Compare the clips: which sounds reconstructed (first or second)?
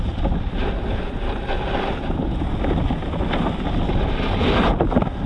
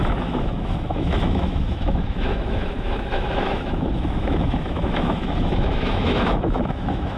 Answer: second